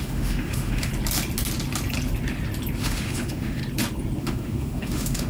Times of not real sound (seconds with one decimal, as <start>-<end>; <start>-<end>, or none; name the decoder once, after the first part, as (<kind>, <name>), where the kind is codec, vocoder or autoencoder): 0.0-0.9 (autoencoder, DAC-VAE); 2.8-3.6; 4.2-5.3

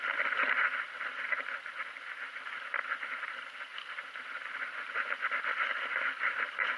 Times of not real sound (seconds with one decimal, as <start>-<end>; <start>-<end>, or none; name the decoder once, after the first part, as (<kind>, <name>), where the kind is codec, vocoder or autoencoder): none

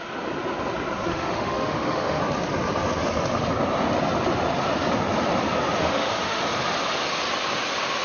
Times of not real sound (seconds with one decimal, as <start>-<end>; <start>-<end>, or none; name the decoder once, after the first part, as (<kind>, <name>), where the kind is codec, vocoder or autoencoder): 1.1-2.2 (autoencoder, DAC-VAE); 5.8-6.4

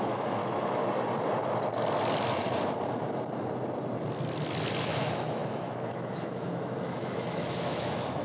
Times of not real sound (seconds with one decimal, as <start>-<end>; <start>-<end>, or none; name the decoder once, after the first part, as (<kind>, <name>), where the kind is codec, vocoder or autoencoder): 0.0-0.4 (autoencoder, DAC-VAE); 4.8-8.2

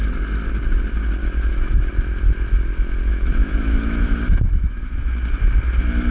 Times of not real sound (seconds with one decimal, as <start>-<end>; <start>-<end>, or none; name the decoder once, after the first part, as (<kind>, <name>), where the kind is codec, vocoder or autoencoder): 1.2-1.9 (autoencoder, DAC-VAE); 3.1-4.8

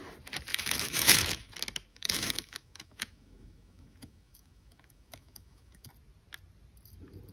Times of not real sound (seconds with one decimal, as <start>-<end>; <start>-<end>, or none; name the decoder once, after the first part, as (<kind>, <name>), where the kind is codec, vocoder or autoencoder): 0.5-1.5 (autoencoder, DAC-VAE); 1.9-5.9